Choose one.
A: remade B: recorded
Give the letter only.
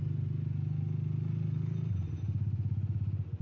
B